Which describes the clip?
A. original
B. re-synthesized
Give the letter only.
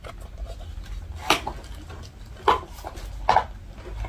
A